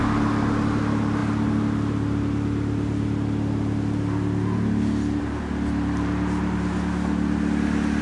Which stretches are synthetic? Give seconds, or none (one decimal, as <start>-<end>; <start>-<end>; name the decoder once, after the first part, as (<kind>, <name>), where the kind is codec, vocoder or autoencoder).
none